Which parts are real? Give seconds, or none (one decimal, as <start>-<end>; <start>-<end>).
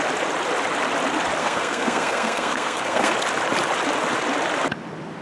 0.0-1.4; 3.1-5.2